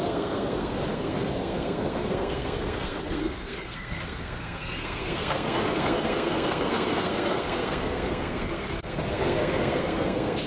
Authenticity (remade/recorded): remade